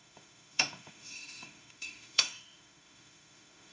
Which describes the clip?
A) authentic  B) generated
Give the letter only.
B